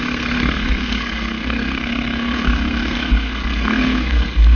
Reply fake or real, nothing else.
fake